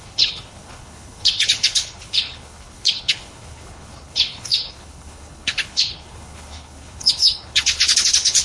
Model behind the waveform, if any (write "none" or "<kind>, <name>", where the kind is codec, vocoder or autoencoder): codec, HILCodec